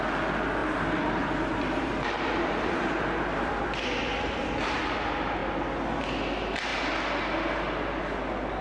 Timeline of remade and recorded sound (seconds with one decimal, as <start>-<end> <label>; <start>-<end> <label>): 0.0-0.6 recorded; 0.6-4.8 remade; 4.8-8.6 recorded